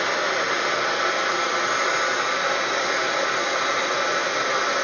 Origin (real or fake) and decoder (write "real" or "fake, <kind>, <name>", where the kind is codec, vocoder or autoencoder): real